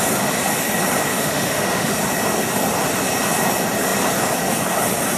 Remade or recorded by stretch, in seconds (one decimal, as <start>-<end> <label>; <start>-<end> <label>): 0.0-1.1 recorded; 1.1-1.9 remade; 1.9-5.2 recorded